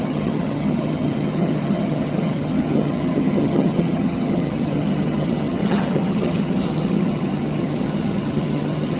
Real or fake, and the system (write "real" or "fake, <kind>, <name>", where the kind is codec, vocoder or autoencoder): fake, vocoder, HiFi-GAN